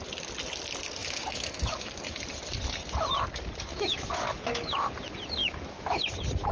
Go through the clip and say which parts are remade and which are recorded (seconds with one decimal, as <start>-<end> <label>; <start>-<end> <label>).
0.0-1.0 recorded; 1.0-1.9 remade; 1.9-3.7 recorded; 3.7-4.9 remade; 4.9-5.4 recorded; 5.4-6.0 remade; 6.0-6.5 recorded